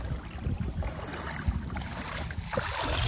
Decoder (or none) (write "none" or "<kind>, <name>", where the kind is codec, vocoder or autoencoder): none